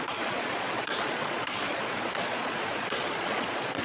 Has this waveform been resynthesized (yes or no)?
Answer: yes